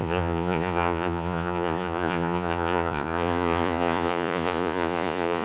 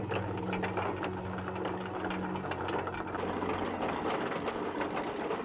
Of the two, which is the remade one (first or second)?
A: first